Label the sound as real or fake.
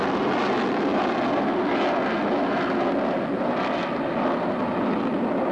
real